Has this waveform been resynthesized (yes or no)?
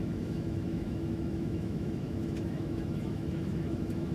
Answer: yes